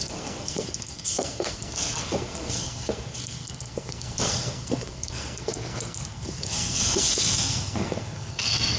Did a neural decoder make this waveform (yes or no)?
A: yes